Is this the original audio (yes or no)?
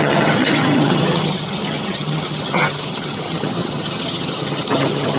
no